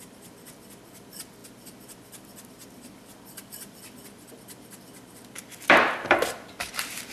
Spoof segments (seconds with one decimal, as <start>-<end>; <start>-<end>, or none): none